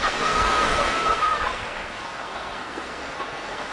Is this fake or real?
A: fake